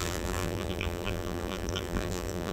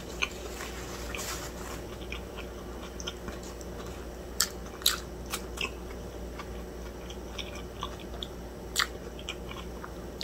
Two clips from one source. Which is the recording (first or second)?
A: second